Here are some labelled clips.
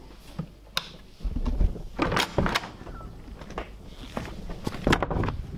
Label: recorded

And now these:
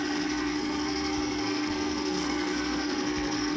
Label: remade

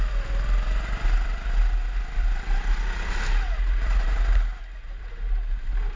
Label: recorded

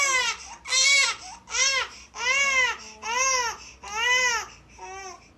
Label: recorded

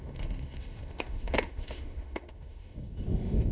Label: remade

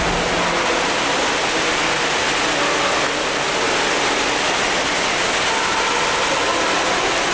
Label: recorded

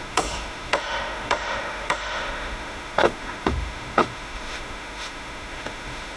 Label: remade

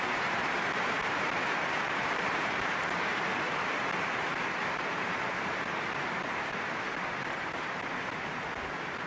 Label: remade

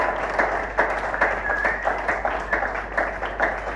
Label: recorded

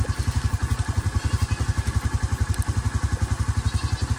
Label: recorded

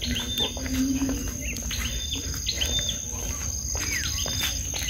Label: recorded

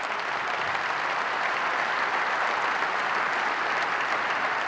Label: recorded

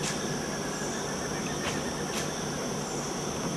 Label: recorded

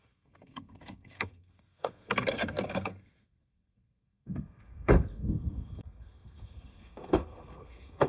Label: remade